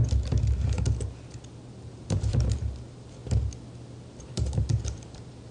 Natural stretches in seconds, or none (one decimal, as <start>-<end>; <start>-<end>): 0.0-1.8; 3.2-4.2